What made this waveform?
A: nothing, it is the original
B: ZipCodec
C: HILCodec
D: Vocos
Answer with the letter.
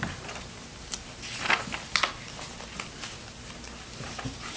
A